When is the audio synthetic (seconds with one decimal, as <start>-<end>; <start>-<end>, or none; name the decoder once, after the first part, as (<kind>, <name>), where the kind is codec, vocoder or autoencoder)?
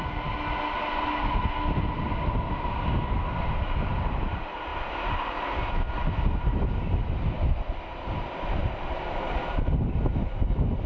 8.6-10.0 (vocoder, BigVGAN v2)